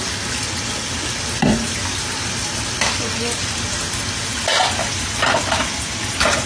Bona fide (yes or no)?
yes